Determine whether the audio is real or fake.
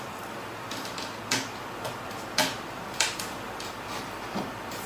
fake